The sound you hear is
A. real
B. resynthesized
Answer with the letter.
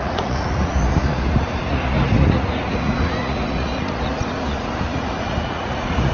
B